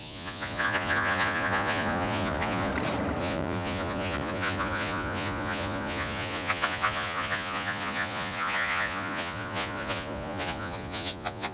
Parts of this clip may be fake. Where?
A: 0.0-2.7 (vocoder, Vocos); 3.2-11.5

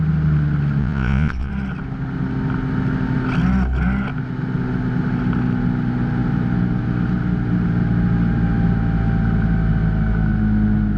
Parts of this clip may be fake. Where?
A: 0.8-1.5 (vocoder, Vocos)

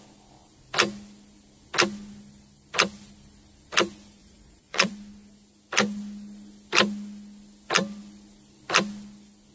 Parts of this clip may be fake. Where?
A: 4.2-4.9 (vocoder, Vocos)